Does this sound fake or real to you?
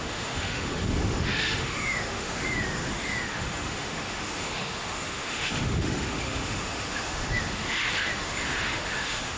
fake